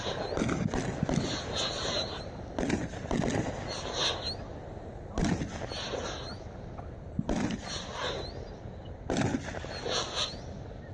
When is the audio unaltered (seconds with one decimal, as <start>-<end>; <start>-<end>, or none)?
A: 0.0-10.9

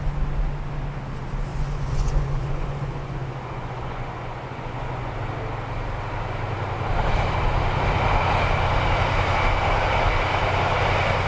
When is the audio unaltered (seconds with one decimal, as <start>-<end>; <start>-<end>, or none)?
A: 0.0-1.5; 5.1-11.3